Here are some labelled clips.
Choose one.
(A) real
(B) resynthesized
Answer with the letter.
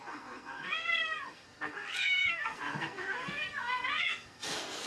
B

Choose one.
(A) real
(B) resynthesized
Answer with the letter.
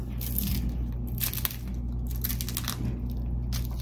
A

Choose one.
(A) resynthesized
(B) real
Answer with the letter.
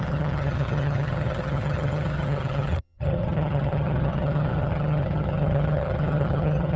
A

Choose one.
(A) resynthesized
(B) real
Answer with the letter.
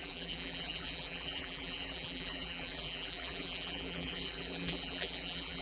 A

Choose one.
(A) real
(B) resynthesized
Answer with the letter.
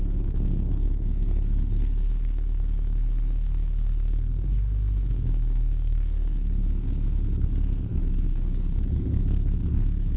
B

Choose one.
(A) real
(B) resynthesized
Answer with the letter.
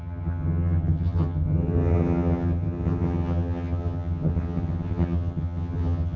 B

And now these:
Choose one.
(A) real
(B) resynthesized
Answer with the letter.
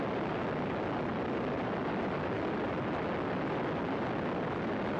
A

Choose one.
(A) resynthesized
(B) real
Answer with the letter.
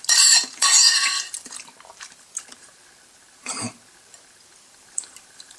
A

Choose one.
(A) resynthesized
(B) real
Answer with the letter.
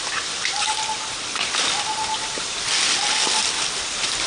B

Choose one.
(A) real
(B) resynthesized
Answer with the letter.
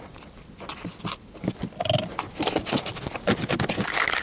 A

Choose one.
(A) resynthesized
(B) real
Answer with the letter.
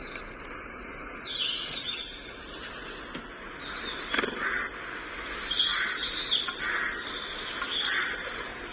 B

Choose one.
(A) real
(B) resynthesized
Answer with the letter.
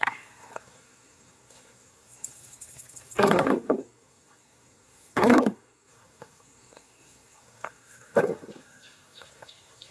B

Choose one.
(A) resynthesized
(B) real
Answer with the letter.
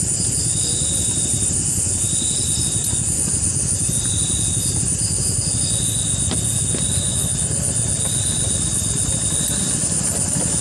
B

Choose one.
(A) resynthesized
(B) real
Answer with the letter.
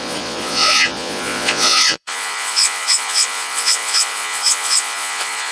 A